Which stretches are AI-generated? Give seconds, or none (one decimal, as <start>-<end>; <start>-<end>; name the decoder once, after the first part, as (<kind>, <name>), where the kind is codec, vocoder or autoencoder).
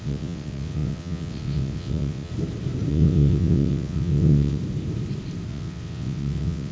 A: 0.0-2.3 (vocoder, WaveNeXt); 2.9-4.6; 5.5-6.7